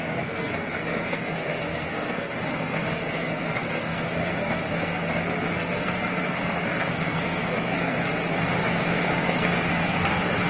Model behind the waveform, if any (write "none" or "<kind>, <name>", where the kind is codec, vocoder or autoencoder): codec, SNAC